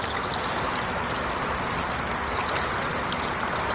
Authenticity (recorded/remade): recorded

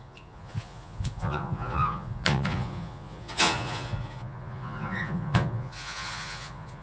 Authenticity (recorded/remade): remade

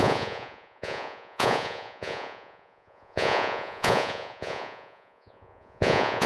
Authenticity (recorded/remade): remade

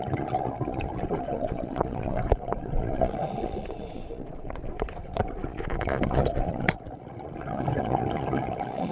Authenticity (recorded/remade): remade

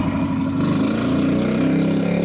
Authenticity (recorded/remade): recorded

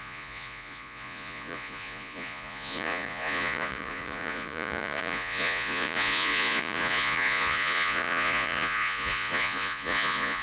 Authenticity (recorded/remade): remade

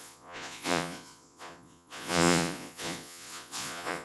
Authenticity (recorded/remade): remade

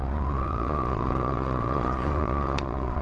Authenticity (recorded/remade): remade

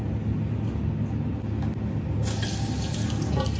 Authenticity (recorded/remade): recorded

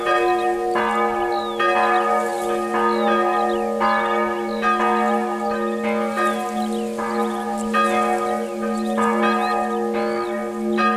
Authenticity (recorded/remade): recorded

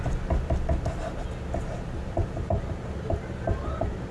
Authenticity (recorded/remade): recorded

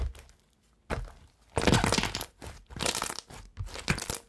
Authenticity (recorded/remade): recorded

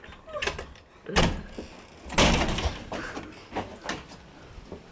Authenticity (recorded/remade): recorded